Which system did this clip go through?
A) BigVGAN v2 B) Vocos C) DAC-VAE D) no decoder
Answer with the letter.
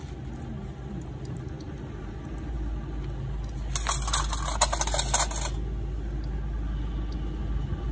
D